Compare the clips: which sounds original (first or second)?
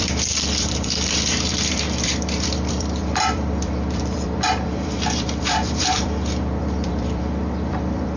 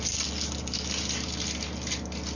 second